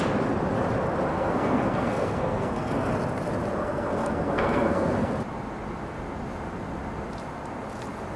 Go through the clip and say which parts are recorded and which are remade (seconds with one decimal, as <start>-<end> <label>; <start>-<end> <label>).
0.0-1.1 recorded; 1.1-2.9 remade; 2.9-3.6 recorded; 3.6-5.1 remade; 5.1-8.2 recorded

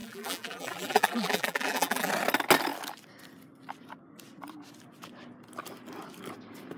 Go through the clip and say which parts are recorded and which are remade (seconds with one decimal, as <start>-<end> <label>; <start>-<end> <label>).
0.0-2.1 remade; 2.1-6.8 recorded

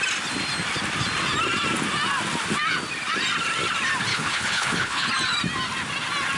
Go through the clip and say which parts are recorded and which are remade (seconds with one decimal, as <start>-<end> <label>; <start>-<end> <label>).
0.0-4.1 recorded; 4.1-5.1 remade; 5.1-6.4 recorded